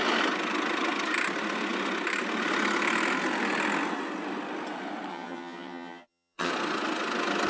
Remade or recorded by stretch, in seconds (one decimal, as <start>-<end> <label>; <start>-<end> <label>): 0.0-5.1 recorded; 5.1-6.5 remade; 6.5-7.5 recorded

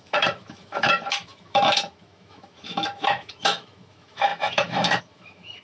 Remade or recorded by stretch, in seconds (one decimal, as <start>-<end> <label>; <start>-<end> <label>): 0.0-5.6 remade

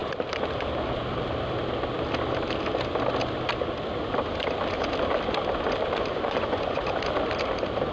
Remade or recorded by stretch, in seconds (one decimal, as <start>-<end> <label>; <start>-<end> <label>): 0.0-6.1 recorded; 6.1-6.9 remade; 6.9-7.9 recorded

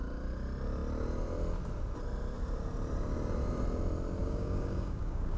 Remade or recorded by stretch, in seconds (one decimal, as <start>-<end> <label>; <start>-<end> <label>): 0.0-4.2 recorded; 4.2-5.4 remade